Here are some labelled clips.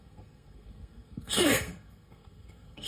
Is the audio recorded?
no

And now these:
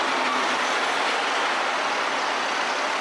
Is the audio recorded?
yes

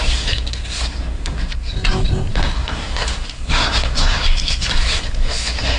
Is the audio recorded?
no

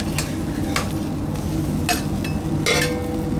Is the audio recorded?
yes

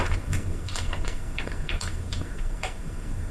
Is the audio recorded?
no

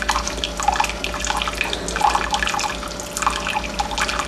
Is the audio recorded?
yes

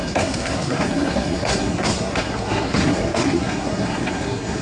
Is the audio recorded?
no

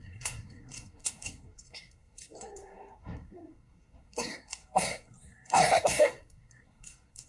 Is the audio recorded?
no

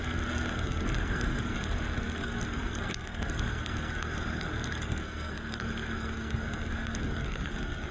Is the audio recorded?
no